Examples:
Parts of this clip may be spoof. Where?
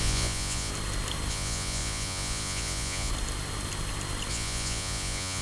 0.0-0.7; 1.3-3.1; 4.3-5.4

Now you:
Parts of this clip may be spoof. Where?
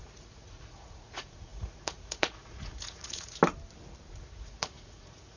0.0-3.4; 4.1-5.4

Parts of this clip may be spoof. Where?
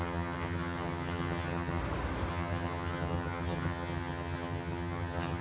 0.0-1.8; 2.3-5.4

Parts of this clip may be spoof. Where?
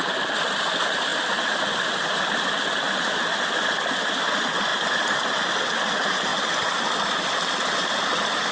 none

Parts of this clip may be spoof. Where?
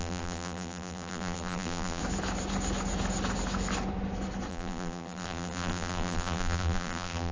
0.0-2.0; 4.5-7.3